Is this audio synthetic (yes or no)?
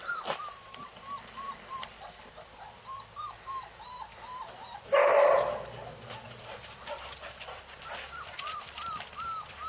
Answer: no